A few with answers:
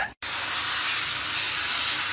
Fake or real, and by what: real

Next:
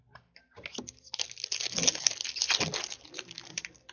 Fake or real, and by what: real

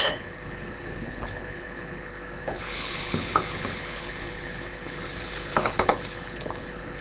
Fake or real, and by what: fake, codec, HILCodec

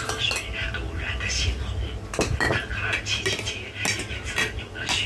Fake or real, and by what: real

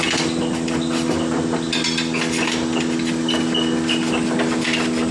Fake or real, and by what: real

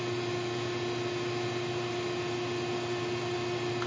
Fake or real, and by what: real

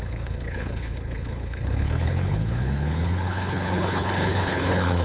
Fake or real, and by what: fake, codec, HILCodec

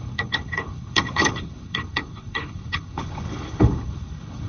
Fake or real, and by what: fake, codec, HILCodec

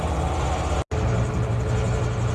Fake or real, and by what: real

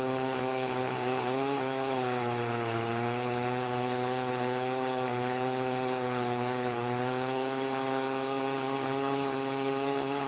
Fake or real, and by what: fake, codec, HILCodec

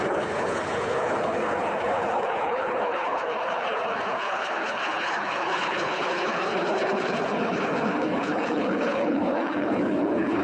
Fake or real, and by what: fake, codec, HILCodec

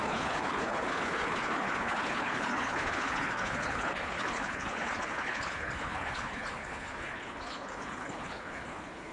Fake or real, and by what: fake, codec, HILCodec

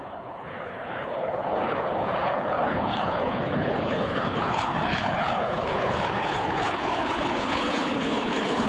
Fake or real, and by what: fake, codec, HILCodec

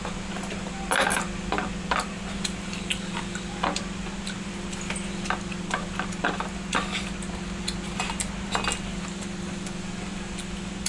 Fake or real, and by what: real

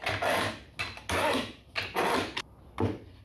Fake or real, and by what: real